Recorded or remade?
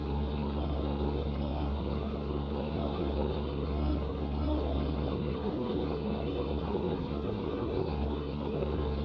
remade